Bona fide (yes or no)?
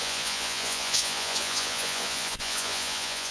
no